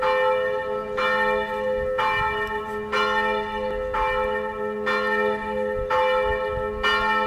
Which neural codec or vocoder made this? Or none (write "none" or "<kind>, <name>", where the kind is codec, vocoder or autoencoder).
none